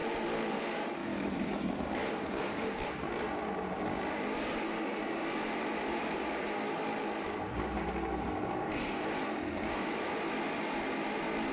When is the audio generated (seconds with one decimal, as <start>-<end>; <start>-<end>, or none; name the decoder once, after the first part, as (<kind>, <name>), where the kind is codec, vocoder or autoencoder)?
1.0-1.7 (autoencoder, DAC-VAE)